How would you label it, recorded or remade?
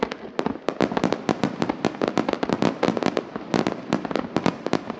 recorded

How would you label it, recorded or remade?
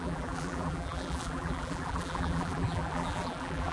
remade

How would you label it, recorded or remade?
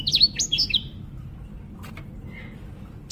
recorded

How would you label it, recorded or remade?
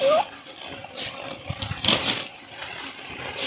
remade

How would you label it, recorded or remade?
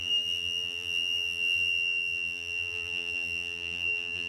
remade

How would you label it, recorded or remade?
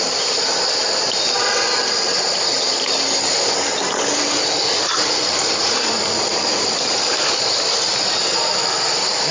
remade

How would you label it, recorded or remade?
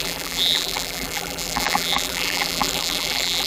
remade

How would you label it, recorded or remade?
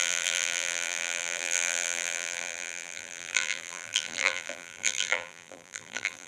remade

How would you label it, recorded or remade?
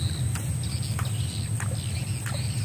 recorded